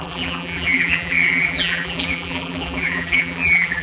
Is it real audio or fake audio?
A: fake